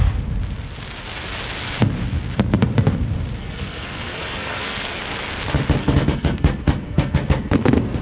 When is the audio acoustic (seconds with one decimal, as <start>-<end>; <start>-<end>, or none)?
0.0-3.4; 5.0-5.8